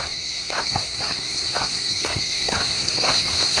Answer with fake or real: fake